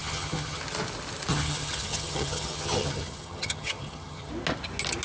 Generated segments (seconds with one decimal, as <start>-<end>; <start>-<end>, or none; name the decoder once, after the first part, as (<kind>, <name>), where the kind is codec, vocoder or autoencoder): 0.0-0.6 (vocoder, HiFi-GAN); 1.3-4.3